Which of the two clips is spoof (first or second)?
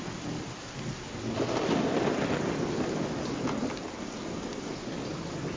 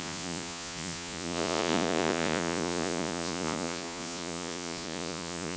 second